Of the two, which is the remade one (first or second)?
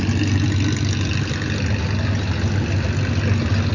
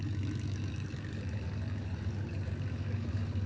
second